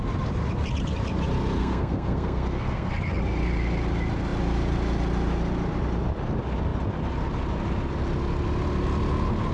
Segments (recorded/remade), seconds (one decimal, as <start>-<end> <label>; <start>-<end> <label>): 0.0-1.6 recorded; 1.6-2.9 remade; 2.9-9.5 recorded